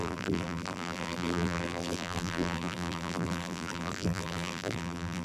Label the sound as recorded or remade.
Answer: remade